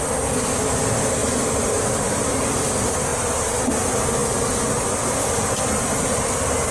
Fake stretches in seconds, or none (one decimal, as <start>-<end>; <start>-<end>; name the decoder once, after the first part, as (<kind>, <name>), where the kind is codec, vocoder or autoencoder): 1.2-2.3 (vocoder, BigVGAN v2)

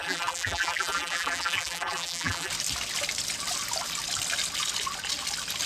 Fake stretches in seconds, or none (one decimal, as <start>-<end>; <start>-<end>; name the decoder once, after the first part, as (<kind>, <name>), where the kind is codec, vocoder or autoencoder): 0.0-2.5 (vocoder, BigVGAN v2)